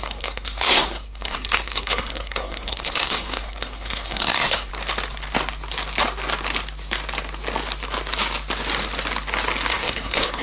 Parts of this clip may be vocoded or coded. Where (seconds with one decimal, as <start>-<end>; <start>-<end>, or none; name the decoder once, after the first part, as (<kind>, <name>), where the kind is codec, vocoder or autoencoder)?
0.0-4.7 (codec, SNAC); 9.7-10.4